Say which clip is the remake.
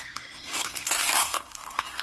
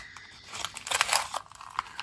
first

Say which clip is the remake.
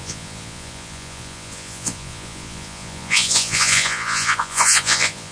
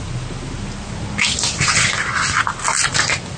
first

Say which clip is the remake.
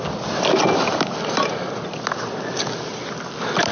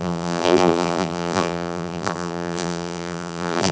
second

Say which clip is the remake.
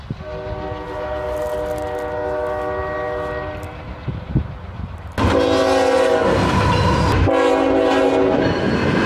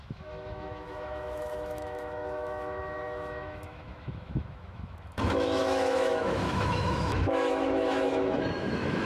second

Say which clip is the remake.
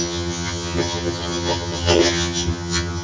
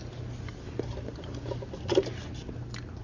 first